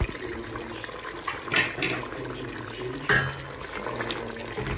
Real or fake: real